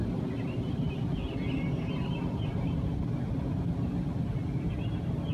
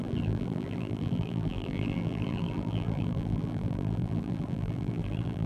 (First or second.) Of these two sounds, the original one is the first